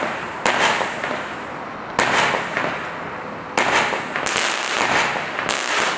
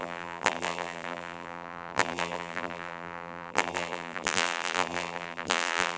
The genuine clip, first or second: first